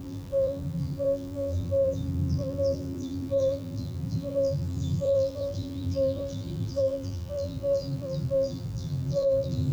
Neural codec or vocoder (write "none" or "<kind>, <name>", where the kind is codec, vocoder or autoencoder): vocoder, BigVGAN v2